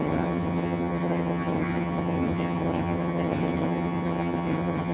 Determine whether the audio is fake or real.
fake